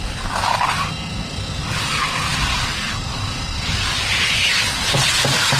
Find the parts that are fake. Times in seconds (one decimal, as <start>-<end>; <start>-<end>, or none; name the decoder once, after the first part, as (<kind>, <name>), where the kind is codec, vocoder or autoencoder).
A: none